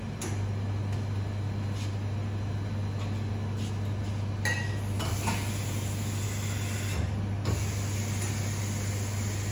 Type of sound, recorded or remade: recorded